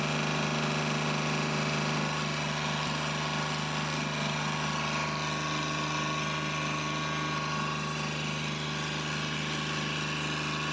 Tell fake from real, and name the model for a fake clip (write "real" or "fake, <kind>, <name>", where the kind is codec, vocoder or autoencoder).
real